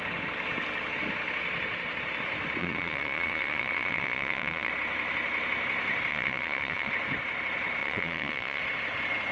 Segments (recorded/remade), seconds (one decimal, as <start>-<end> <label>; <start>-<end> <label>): 0.0-2.6 recorded; 2.6-4.7 remade; 4.7-6.1 recorded; 6.1-6.9 remade; 6.9-7.8 recorded; 7.8-8.6 remade; 8.6-9.3 recorded